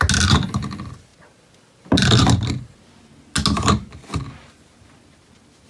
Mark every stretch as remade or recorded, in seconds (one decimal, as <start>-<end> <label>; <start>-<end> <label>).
0.0-5.7 recorded